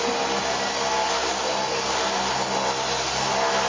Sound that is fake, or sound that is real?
real